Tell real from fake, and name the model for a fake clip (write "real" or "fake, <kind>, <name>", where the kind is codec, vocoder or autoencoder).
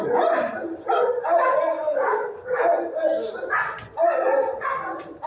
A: real